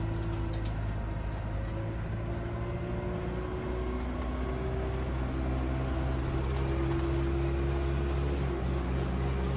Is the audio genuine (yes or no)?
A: yes